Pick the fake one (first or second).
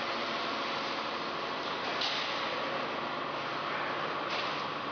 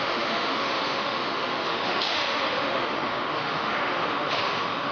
second